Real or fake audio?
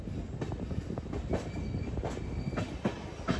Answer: real